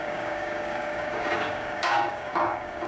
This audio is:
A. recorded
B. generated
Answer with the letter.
B